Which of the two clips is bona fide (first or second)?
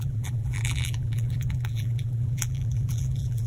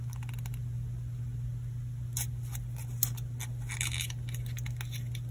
second